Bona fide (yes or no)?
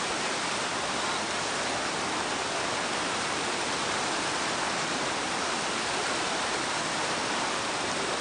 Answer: yes